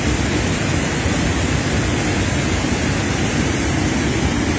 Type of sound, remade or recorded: recorded